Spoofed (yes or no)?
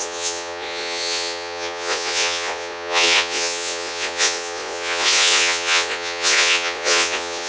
yes